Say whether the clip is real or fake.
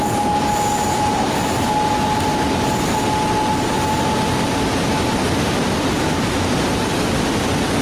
real